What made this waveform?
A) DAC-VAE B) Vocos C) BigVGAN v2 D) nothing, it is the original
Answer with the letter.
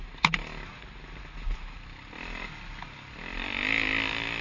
D